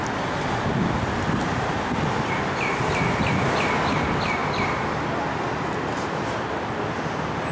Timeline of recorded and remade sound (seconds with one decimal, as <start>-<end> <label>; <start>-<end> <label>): 0.0-7.5 recorded